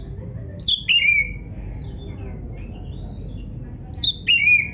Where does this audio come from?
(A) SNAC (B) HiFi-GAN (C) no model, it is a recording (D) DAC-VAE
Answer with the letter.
C